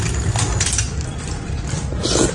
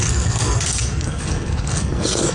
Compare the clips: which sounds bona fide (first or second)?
first